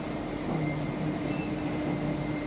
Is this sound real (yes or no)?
no